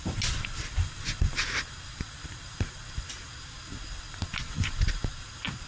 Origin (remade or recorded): recorded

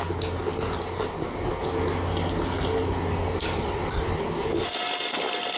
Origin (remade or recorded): recorded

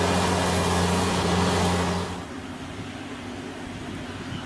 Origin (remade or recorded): recorded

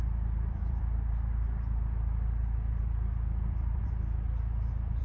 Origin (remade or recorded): remade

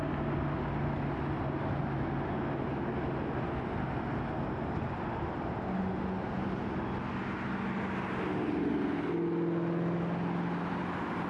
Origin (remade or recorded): recorded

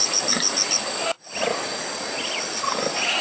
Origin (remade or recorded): recorded